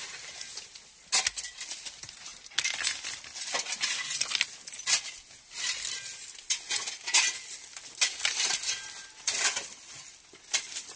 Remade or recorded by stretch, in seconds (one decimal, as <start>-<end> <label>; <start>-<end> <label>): 0.0-11.0 recorded